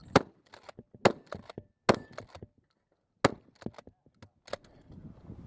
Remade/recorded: recorded